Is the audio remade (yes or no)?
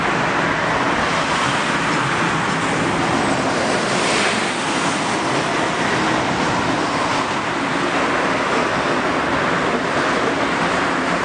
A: no